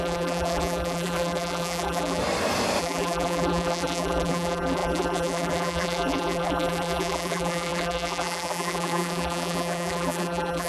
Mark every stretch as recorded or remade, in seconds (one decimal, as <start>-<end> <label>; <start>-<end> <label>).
0.0-2.2 remade; 2.2-2.8 recorded; 2.8-10.7 remade